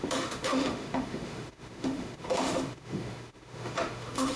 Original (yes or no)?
no